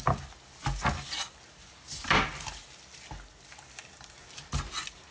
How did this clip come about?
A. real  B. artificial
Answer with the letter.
A